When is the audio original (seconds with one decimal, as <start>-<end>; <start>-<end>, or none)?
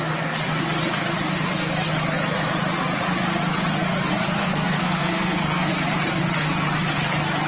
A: 0.0-4.4; 5.7-7.5